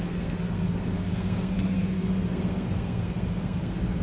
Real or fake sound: fake